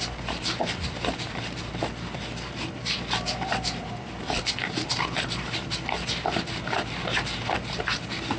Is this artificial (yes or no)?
yes